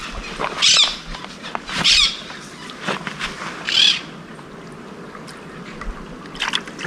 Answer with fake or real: real